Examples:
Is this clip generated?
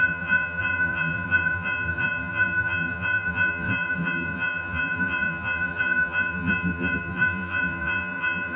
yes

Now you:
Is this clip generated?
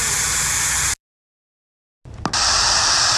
no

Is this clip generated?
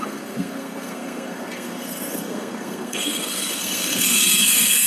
yes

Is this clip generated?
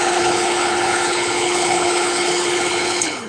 yes